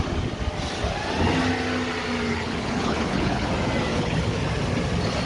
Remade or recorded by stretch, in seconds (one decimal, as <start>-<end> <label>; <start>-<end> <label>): 0.0-2.3 recorded; 2.3-3.5 remade; 3.5-3.9 recorded; 3.9-4.4 remade; 4.4-5.3 recorded